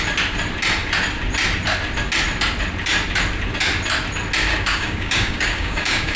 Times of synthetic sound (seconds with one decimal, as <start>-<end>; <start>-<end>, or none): 4.5-6.2